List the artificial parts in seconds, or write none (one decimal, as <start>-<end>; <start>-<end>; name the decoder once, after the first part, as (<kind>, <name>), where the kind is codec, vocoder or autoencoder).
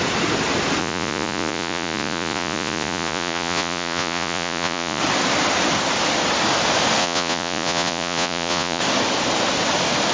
0.8-5.0 (vocoder, Vocos); 7.0-8.8